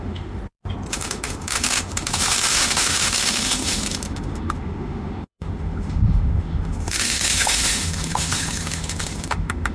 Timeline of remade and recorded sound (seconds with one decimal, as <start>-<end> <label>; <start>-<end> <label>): 0.0-0.4 remade; 0.4-0.9 recorded; 0.9-9.7 remade